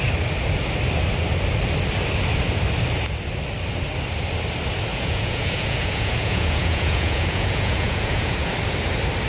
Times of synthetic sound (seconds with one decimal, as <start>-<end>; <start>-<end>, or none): 4.9-8.5